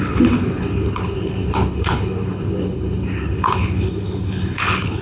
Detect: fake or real fake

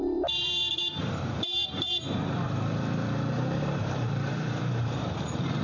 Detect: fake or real fake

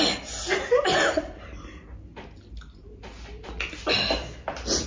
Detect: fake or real real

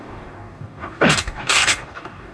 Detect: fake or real fake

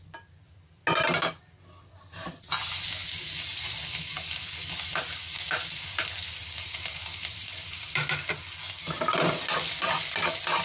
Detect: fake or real real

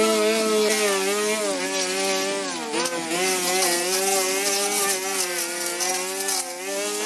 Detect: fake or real real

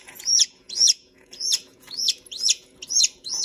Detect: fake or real fake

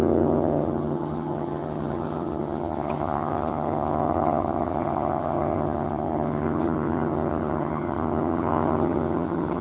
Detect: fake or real fake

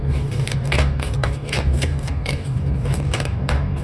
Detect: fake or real fake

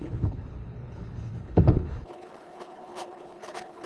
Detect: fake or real fake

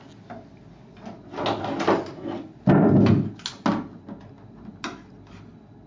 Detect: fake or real real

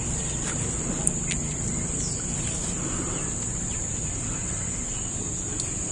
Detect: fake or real real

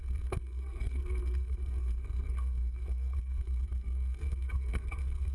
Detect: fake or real fake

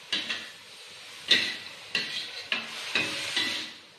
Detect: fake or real real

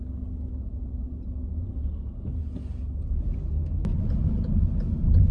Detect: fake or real real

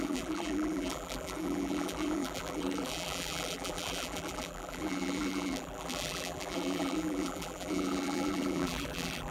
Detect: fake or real fake